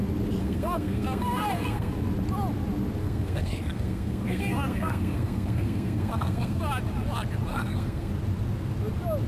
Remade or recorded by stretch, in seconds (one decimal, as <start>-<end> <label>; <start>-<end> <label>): 0.0-0.4 recorded; 0.4-1.9 remade; 1.9-3.0 recorded; 3.0-6.6 remade; 6.6-7.5 recorded; 7.5-8.1 remade; 8.1-9.3 recorded